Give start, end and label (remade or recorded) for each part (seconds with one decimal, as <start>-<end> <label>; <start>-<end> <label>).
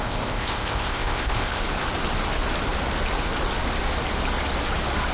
0.0-1.6 remade; 1.6-5.1 recorded